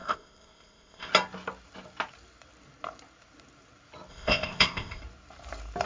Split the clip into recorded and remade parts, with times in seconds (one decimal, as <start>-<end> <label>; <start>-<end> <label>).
0.0-1.1 remade; 1.1-4.1 recorded; 4.1-5.0 remade; 5.0-5.9 recorded